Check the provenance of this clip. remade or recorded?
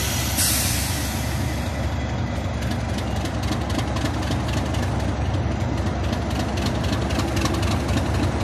recorded